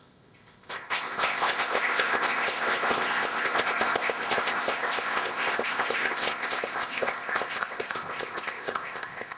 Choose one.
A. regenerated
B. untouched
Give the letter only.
A